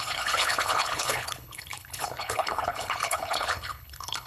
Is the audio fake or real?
fake